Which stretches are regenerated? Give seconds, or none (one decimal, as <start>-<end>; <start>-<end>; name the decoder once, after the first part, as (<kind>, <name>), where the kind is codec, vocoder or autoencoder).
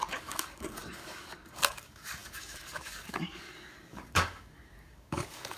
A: 0.0-5.6 (codec, DAC)